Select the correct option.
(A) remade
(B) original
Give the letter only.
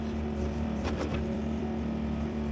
A